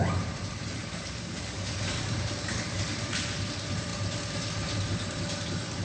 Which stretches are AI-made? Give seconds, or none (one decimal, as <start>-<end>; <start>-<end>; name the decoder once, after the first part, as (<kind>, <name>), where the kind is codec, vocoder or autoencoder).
0.8-2.9 (codec, DAC)